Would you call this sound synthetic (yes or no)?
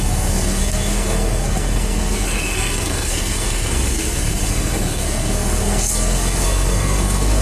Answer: yes